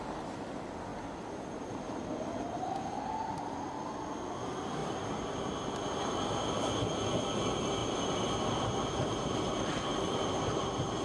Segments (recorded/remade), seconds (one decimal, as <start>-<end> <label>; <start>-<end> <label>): 0.0-4.8 recorded; 4.8-6.7 remade; 6.7-7.8 recorded; 7.8-9.5 remade; 9.5-9.9 recorded; 9.9-10.6 remade; 10.6-11.0 recorded